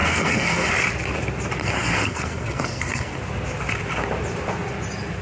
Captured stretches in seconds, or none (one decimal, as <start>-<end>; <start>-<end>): 0.7-1.6; 3.1-5.2